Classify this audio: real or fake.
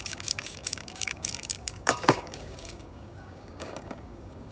fake